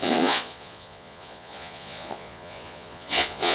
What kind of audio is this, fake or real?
fake